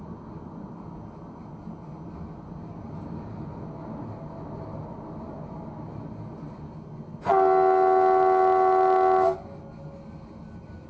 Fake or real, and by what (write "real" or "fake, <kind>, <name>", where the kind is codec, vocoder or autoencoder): real